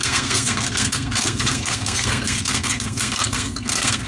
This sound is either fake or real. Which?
fake